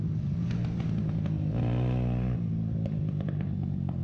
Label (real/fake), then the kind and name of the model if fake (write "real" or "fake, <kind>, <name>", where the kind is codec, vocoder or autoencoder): real